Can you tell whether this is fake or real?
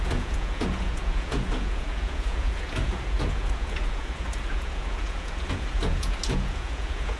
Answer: fake